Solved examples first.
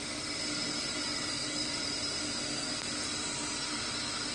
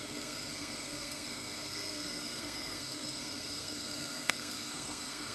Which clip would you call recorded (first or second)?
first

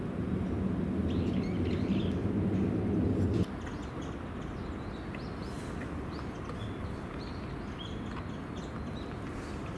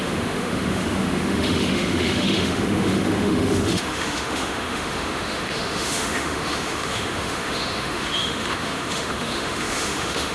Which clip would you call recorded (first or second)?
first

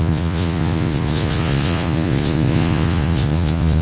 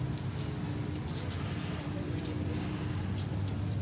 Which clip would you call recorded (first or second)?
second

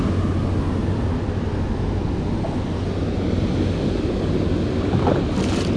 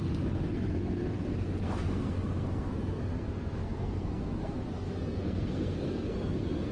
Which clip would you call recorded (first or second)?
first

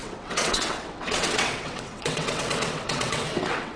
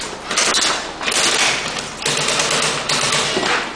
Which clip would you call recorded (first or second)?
second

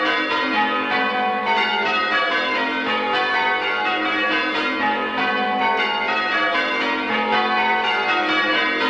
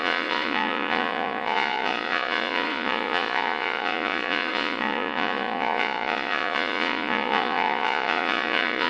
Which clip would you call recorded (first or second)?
first